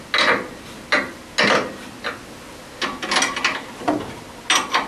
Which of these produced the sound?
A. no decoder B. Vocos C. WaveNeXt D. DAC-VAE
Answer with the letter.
A